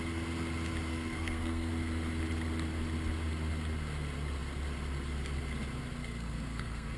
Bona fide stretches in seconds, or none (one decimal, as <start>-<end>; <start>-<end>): 0.0-0.9; 1.7-6.0